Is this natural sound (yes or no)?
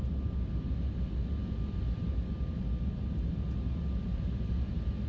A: yes